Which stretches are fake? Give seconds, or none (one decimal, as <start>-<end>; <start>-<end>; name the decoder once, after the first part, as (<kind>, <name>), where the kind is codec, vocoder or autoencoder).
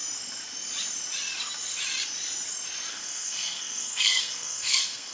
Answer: 2.9-5.1 (codec, SNAC)